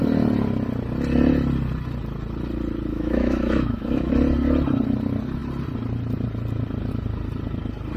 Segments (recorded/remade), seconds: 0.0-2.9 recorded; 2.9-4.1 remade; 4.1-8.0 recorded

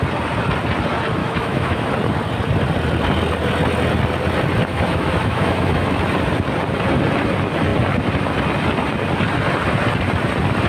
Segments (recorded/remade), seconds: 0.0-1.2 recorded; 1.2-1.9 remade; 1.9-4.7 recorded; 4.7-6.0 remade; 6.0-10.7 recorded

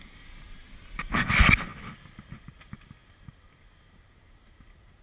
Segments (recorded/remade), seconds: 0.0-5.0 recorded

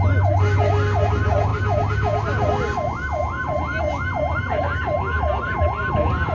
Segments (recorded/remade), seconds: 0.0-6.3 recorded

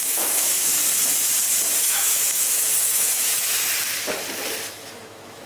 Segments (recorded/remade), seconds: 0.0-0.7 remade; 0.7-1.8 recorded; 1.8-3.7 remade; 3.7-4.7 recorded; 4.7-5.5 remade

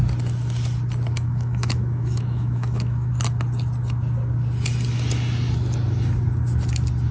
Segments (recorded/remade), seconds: 0.0-1.1 recorded; 1.1-3.1 remade; 3.1-7.1 recorded